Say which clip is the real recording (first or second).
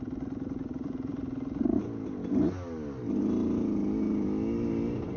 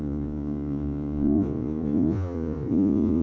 first